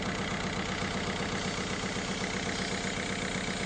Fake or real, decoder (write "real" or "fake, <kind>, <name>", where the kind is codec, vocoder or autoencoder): real